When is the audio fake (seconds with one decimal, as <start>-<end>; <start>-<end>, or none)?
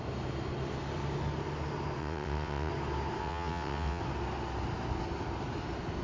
2.0-2.7; 3.2-4.0